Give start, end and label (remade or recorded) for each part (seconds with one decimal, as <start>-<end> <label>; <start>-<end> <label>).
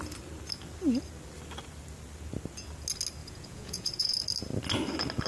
0.0-3.2 recorded; 3.2-4.2 remade; 4.2-5.3 recorded